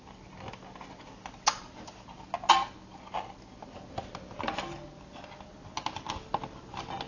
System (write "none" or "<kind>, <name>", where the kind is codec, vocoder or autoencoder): none